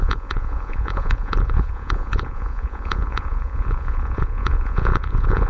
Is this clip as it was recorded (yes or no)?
no